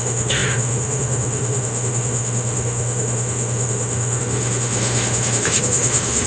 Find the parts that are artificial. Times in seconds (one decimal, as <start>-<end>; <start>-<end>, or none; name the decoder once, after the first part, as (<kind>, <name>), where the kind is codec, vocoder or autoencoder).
0.0-6.3 (autoencoder, DAC-VAE)